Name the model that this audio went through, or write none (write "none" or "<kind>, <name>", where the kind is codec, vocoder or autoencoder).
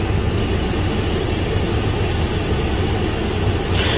none